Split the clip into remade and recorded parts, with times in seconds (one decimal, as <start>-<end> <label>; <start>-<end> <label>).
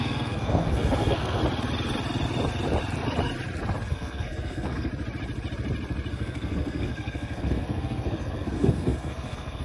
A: 0.0-1.4 remade; 1.4-3.9 recorded; 3.9-4.9 remade; 4.9-6.1 recorded; 6.1-9.6 remade